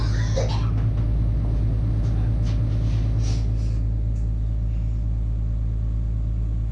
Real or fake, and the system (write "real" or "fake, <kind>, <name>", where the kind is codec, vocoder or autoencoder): real